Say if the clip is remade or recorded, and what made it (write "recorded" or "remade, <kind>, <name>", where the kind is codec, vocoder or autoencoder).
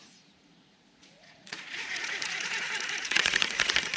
remade, vocoder, Vocos